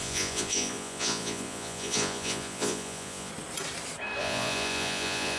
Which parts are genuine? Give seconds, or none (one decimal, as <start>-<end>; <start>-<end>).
3.3-4.2